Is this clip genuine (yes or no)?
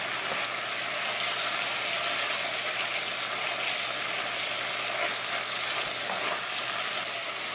yes